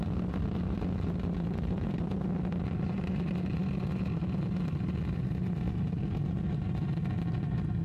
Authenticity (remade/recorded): recorded